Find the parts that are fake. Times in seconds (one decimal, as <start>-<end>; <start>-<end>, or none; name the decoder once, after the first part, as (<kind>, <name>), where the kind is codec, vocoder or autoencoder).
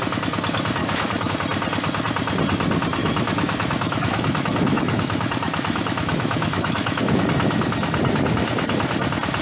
0.8-1.3 (autoencoder, DAC-VAE); 3.0-7.2